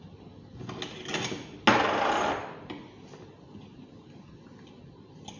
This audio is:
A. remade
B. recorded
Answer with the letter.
B